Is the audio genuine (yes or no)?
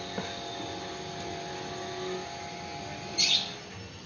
yes